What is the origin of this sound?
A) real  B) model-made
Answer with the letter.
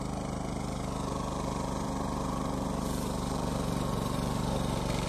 B